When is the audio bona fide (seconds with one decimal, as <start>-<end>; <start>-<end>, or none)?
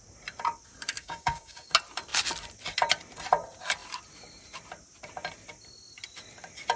0.0-1.0; 1.7-6.8